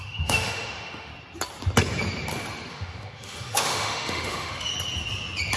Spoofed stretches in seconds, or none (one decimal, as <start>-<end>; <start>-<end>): 0.0-1.1; 2.7-4.7